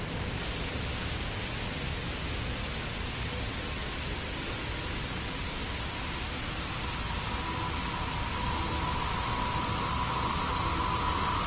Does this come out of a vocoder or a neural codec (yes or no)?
no